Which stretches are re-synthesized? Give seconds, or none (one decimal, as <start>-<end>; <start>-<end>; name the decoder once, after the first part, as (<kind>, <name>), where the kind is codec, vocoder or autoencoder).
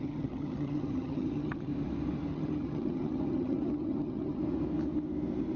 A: 0.0-1.7 (vocoder, HiFi-GAN); 2.3-4.4